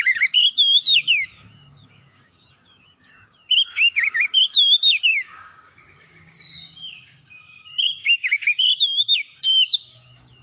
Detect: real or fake fake